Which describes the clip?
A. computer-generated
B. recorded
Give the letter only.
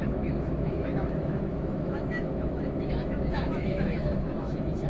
A